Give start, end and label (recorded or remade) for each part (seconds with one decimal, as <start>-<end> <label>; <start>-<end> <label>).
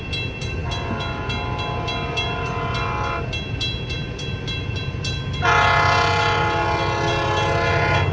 0.0-8.1 recorded